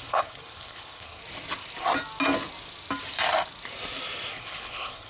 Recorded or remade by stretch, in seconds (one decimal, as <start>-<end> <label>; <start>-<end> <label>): 0.0-1.2 remade; 1.2-4.3 recorded; 4.3-5.1 remade